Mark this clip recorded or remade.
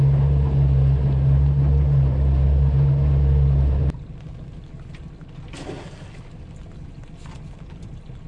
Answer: recorded